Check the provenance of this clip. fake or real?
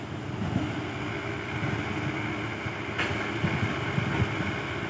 real